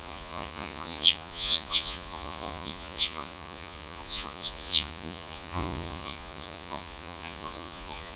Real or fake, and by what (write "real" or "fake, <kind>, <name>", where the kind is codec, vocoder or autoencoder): fake, vocoder, Vocos